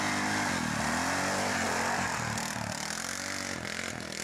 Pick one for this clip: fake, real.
real